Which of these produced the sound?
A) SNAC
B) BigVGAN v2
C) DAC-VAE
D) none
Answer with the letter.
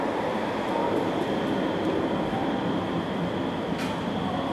D